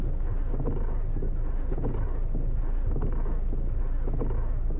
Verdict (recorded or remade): recorded